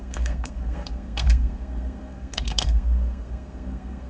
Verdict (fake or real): fake